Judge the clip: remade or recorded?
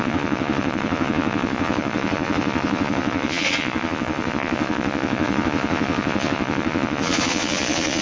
remade